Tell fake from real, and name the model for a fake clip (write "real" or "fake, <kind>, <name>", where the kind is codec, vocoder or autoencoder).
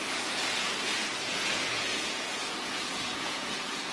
fake, vocoder, Vocos